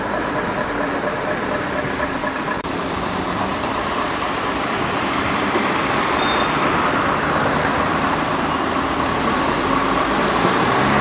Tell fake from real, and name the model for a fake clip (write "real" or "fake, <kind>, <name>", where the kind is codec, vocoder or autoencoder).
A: fake, vocoder, BigVGAN v2